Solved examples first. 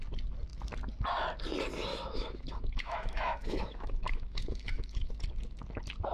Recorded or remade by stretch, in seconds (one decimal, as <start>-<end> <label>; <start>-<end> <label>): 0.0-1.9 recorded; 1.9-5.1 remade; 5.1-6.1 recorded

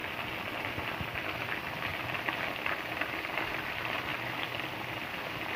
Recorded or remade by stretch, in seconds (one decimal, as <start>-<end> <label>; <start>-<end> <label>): 0.0-5.6 recorded

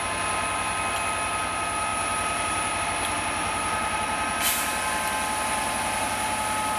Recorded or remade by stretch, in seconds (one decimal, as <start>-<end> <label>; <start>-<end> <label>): 0.0-1.9 recorded; 1.9-2.8 remade; 2.8-6.8 recorded

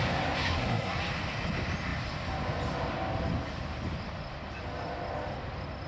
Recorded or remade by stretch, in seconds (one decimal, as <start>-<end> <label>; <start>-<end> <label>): 0.0-0.4 recorded; 0.4-1.0 remade; 1.0-5.9 recorded

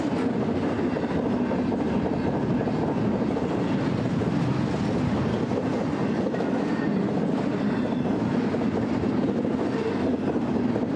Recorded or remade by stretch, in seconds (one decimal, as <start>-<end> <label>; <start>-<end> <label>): 0.0-11.0 recorded

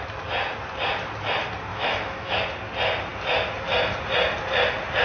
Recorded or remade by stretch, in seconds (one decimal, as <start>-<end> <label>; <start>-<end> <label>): 0.0-1.7 recorded; 1.7-2.4 remade; 2.4-5.0 recorded